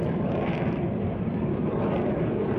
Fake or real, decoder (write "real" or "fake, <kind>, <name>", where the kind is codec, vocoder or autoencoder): fake, vocoder, BigVGAN v2